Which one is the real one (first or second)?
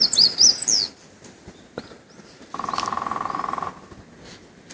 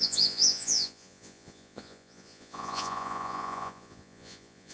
first